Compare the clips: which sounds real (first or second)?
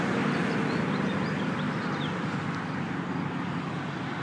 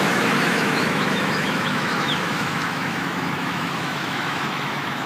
first